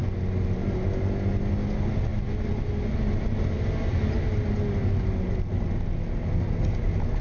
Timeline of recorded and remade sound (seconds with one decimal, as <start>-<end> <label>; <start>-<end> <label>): 0.0-7.2 recorded